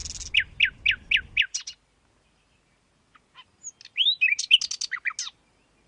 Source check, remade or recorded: recorded